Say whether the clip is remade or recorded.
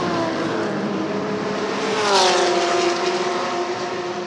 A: recorded